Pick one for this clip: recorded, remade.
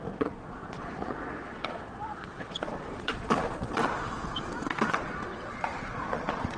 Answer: remade